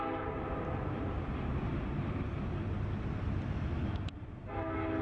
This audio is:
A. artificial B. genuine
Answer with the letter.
B